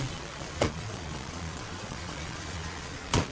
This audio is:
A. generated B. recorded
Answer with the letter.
A